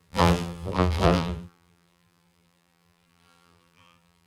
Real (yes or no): no